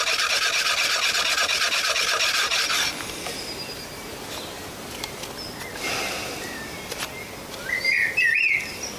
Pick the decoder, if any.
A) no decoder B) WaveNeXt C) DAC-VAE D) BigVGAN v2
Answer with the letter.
A